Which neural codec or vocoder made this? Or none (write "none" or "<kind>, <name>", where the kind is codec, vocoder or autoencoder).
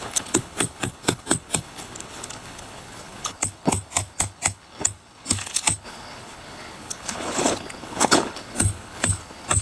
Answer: codec, HILCodec